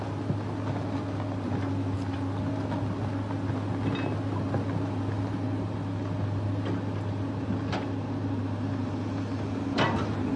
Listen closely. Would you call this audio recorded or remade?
recorded